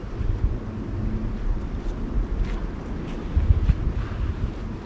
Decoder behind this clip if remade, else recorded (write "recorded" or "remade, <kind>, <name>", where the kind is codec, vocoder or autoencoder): recorded